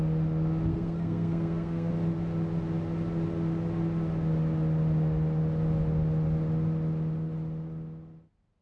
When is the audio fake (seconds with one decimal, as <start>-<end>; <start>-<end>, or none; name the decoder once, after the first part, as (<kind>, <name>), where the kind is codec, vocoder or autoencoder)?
0.7-1.9 (codec, SNAC)